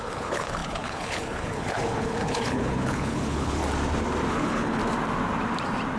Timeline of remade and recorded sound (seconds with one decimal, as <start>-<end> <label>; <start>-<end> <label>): 0.0-3.6 remade; 3.6-4.3 recorded; 4.3-4.8 remade; 4.8-6.0 recorded